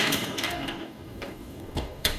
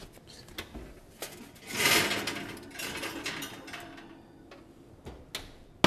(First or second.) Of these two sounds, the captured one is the second